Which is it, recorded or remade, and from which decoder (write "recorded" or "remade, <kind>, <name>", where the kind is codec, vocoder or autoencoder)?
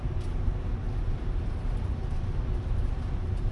recorded